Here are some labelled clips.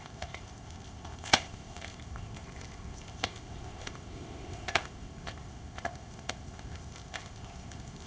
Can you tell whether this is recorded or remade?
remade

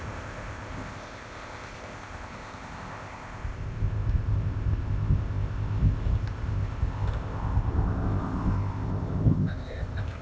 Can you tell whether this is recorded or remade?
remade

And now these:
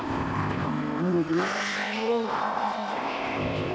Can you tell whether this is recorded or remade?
remade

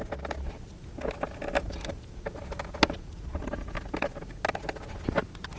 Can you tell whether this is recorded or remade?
recorded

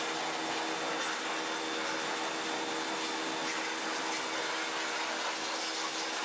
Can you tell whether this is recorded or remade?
recorded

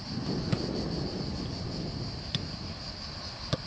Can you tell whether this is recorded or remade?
recorded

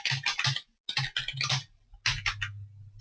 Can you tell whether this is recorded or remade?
recorded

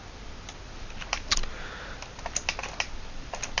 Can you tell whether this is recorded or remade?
recorded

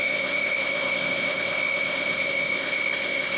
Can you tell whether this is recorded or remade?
remade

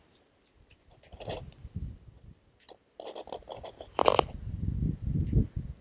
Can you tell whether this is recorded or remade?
recorded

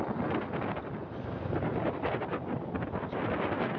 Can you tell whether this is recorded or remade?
recorded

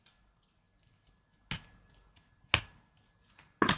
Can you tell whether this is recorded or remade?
recorded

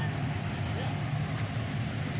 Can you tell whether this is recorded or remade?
recorded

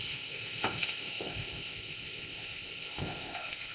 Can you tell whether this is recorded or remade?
remade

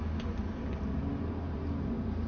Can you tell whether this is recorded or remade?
recorded